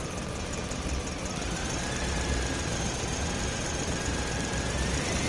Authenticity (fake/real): fake